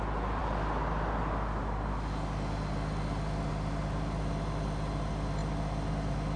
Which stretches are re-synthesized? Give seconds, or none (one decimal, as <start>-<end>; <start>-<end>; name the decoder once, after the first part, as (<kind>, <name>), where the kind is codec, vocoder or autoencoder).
none

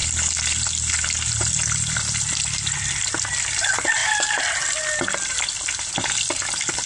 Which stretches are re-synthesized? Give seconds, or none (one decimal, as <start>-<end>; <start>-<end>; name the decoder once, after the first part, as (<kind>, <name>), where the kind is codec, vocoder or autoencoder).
none

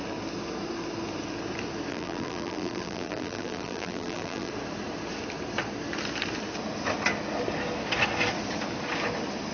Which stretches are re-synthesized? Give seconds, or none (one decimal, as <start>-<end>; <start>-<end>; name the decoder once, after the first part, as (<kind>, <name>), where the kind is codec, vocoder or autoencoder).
1.9-4.5 (vocoder, BigVGAN v2)